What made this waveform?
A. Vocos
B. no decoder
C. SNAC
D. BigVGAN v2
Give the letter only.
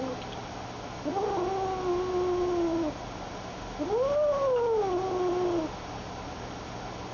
B